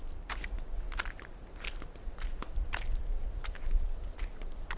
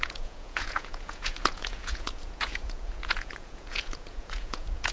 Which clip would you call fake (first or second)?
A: second